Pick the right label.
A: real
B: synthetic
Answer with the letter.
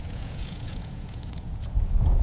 B